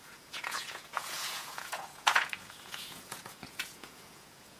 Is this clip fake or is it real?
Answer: fake